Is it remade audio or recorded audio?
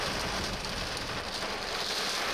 recorded